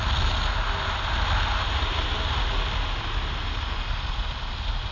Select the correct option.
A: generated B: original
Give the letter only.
B